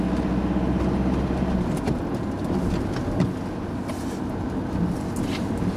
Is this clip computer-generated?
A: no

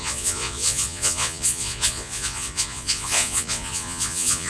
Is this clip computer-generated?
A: yes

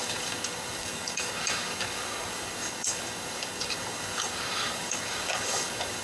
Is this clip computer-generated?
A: yes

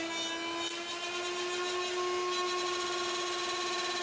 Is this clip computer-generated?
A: no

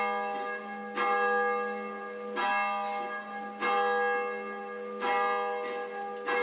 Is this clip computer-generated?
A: no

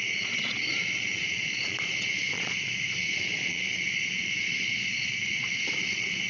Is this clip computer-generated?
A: yes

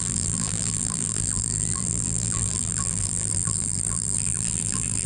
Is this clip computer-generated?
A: yes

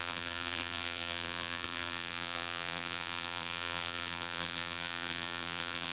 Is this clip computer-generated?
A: yes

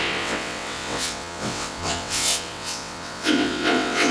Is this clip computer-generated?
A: yes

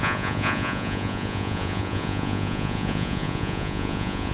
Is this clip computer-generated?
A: yes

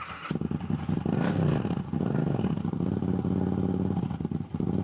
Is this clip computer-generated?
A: no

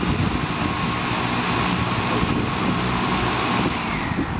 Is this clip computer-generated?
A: no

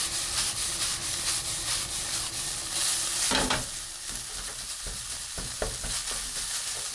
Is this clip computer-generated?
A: no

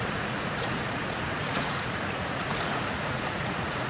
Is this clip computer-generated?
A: yes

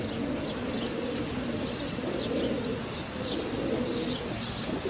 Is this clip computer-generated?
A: no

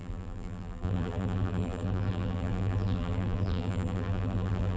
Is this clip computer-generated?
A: yes